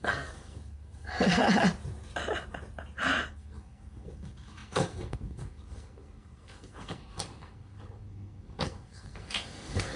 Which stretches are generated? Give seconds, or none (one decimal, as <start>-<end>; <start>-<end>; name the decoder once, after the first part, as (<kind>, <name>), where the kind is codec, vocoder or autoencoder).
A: 0.0-1.4 (codec, SNAC); 3.3-10.0